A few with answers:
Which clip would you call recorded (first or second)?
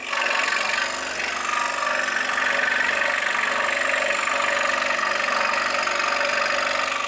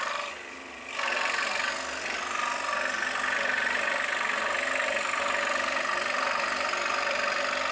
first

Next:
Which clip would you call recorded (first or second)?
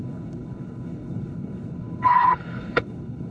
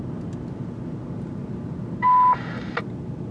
second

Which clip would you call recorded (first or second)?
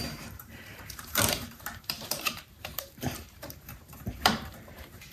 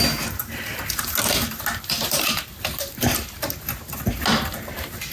second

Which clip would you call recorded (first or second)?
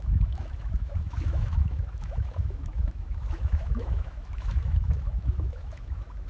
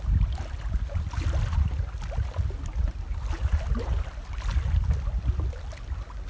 second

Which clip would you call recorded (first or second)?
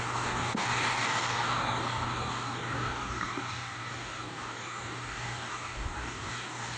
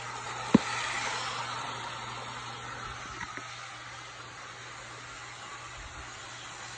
second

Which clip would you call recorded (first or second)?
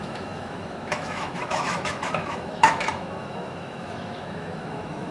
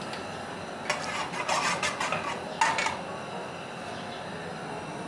second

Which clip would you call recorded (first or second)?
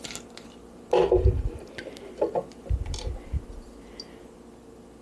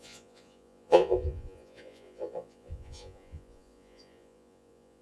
first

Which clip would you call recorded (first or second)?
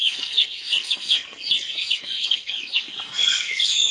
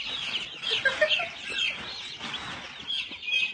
second